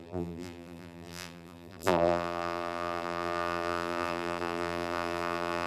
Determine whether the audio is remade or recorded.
remade